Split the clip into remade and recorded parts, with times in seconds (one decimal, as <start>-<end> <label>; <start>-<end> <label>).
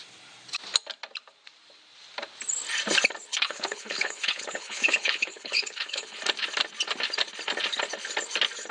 0.0-3.3 recorded; 3.3-6.2 remade; 6.2-8.7 recorded